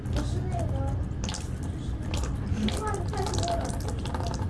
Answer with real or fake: real